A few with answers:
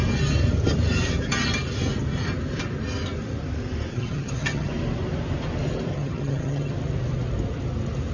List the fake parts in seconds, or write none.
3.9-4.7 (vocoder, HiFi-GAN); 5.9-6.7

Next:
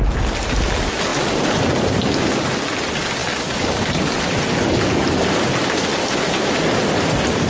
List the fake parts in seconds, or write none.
none

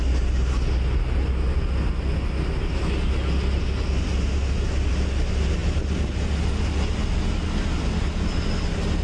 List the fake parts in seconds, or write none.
none

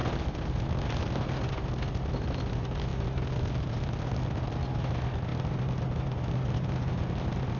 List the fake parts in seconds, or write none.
none

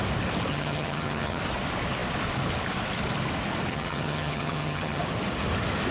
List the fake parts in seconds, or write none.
0.5-1.4 (vocoder, HiFi-GAN); 3.7-5.0

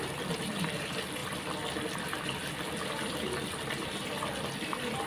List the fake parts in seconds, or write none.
none